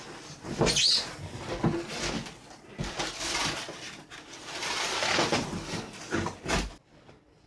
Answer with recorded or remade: recorded